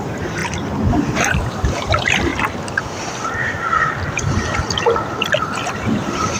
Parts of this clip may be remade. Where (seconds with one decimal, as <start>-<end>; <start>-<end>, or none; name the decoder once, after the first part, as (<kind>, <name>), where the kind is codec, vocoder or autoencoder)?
0.0-0.4 (vocoder, BigVGAN v2); 0.9-2.3; 5.4-6.4